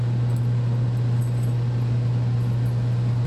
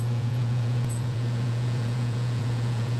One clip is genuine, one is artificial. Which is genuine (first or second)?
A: first